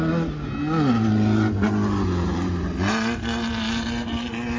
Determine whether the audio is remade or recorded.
recorded